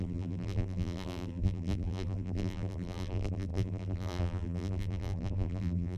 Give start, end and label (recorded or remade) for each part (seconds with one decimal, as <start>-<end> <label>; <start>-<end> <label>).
0.0-6.0 remade